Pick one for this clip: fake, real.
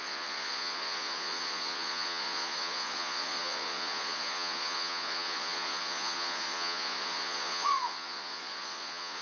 fake